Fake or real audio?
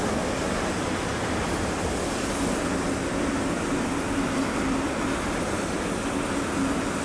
real